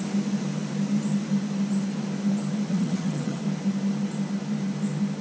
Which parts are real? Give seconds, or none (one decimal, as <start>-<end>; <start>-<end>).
0.0-2.7; 3.4-5.2